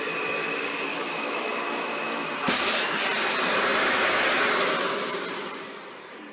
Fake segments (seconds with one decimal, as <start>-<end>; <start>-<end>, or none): 0.9-1.6